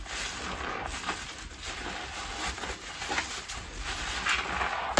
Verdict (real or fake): real